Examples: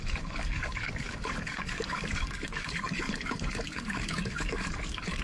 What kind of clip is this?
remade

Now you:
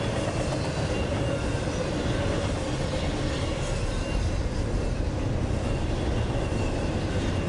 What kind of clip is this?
recorded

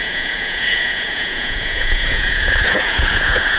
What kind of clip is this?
remade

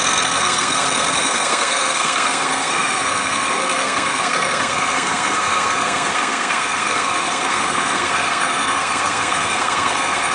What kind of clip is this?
remade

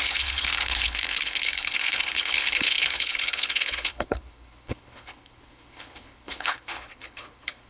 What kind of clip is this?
remade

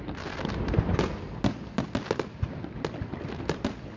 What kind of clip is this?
recorded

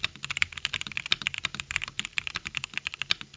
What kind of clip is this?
remade